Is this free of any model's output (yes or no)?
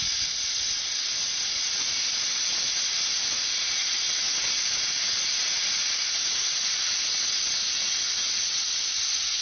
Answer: no